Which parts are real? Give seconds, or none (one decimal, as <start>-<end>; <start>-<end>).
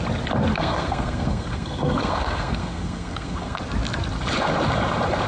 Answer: 0.0-0.5; 3.6-5.3